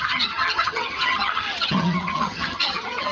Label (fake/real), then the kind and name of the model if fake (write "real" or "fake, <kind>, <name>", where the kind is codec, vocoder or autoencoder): fake, vocoder, HiFi-GAN